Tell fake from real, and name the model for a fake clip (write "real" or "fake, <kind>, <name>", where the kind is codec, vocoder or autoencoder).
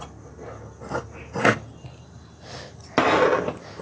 real